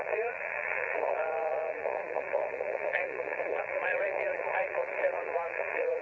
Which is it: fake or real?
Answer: fake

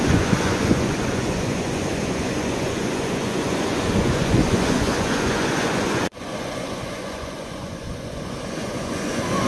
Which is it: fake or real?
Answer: fake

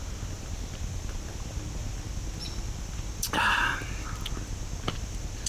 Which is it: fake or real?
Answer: real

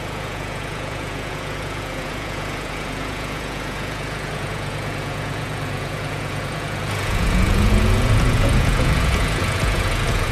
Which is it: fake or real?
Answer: fake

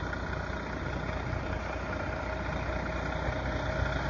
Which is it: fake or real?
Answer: real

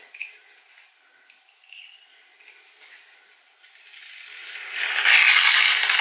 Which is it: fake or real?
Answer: real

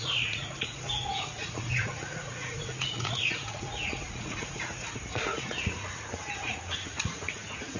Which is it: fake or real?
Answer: fake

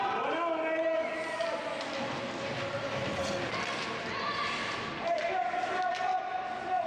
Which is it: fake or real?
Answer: real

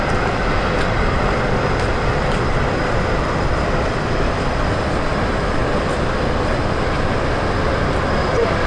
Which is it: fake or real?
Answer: real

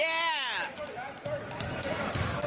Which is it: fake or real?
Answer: real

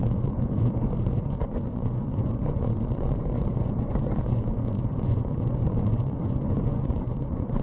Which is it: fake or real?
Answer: fake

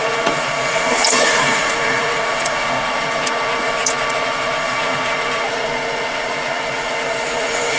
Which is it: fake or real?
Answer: fake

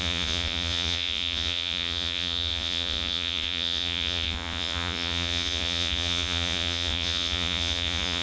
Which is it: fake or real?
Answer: fake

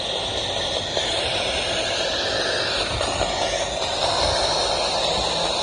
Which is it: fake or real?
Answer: real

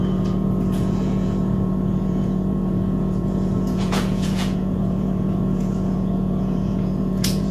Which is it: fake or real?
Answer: fake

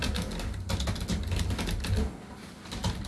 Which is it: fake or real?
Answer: real